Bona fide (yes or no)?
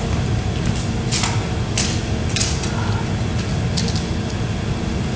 yes